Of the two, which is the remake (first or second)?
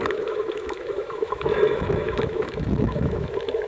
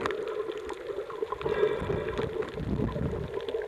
first